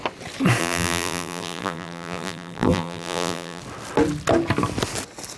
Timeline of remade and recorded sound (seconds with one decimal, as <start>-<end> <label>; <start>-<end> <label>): 0.0-0.6 recorded; 0.6-3.6 remade; 3.6-5.4 recorded